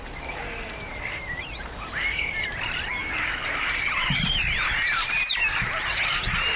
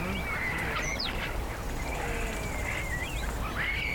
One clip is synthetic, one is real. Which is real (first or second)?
second